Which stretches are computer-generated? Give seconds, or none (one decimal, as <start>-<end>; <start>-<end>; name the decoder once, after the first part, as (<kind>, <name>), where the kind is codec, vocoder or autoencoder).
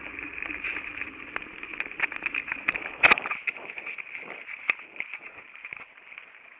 none